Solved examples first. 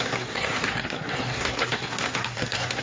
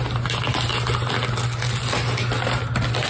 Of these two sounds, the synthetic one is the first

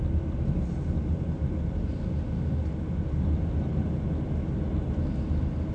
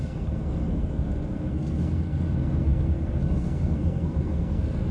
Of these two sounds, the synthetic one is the second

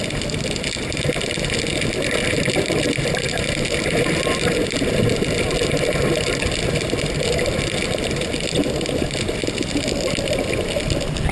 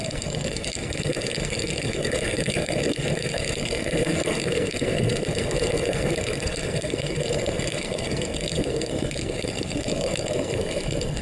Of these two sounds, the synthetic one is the second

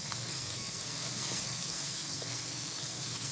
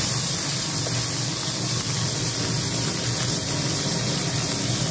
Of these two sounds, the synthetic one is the first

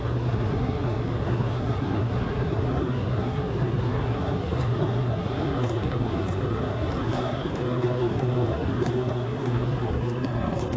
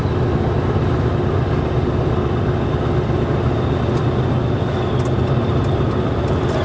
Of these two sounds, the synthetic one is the first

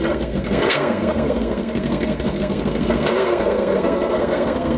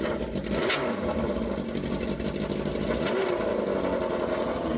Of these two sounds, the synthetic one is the first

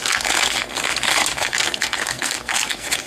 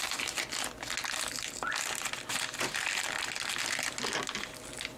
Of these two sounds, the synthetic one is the first